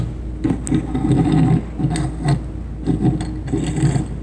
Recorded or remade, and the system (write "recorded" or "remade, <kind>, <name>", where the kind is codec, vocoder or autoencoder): recorded